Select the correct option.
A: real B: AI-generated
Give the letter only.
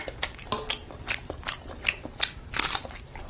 A